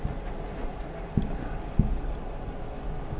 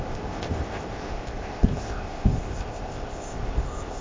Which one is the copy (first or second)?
second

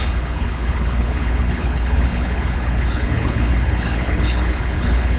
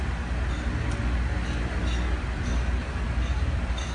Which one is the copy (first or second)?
first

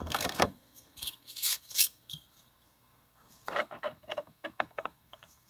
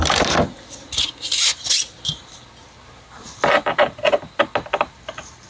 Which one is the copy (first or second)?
first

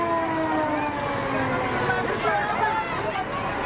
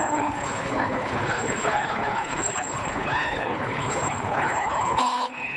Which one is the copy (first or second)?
second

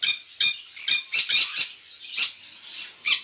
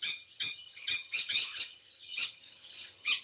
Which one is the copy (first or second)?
second